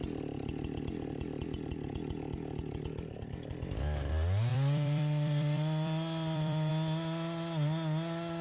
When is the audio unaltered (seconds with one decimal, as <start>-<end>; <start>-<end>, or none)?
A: 0.0-4.5; 6.7-8.4